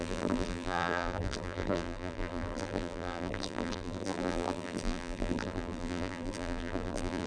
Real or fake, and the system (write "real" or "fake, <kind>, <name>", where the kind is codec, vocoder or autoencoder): fake, vocoder, BigVGAN v2